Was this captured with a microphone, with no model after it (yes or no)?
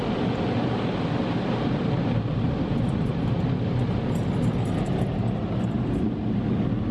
yes